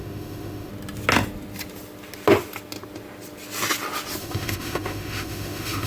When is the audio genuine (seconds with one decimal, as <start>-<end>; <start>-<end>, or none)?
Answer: 0.7-4.2